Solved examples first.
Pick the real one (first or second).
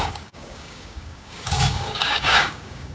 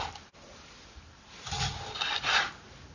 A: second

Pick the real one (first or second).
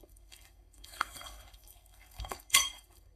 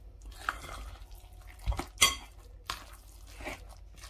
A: second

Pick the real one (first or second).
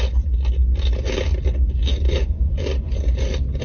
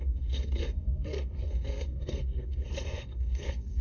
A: first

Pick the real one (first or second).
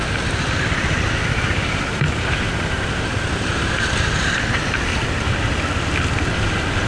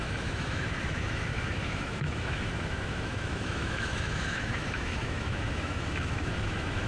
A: first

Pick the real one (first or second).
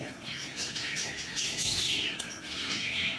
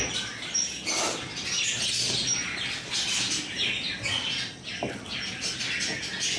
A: second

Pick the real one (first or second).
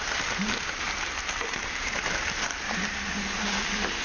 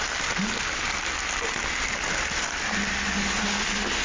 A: second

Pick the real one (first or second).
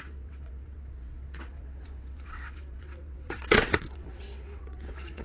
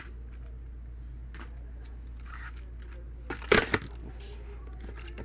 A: second